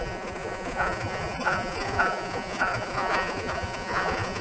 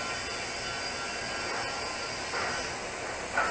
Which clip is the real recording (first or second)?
second